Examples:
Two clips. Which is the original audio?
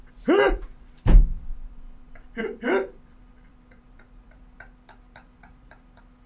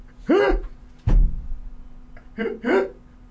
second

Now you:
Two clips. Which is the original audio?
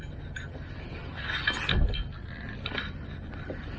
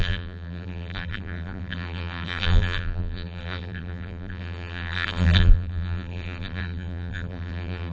first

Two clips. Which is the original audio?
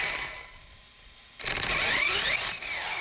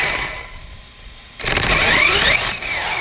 first